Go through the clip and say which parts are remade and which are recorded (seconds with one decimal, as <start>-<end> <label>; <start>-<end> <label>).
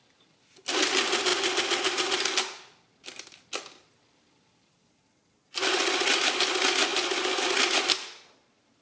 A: 0.0-8.8 recorded